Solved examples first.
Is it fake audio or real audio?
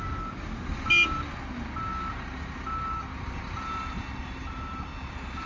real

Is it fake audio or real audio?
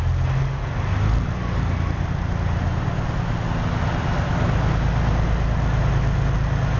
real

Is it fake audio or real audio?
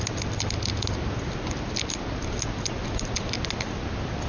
real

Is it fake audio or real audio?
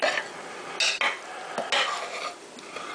real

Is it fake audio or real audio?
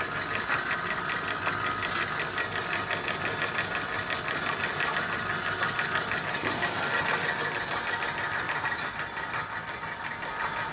real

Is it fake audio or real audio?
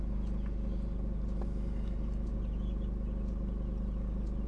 real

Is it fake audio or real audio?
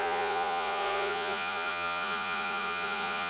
fake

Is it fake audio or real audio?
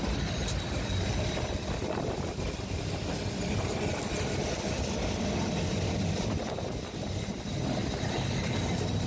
real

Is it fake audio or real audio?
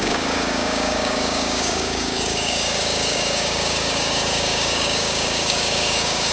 fake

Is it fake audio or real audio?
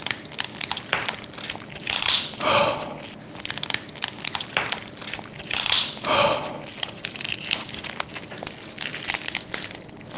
real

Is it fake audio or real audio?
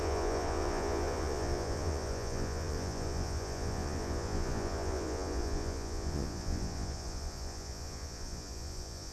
fake